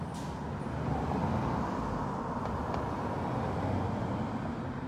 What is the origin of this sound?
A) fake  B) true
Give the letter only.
B